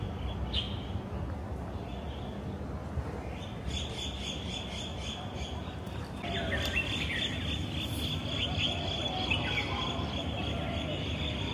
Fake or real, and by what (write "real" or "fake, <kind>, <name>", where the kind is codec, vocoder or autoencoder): real